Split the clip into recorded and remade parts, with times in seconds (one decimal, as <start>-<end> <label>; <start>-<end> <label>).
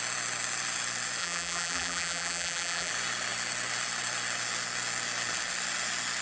0.0-1.2 recorded; 1.2-2.9 remade; 2.9-6.2 recorded